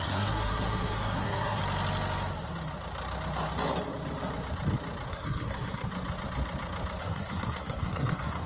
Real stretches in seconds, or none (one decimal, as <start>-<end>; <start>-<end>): 1.6-5.1; 5.9-7.0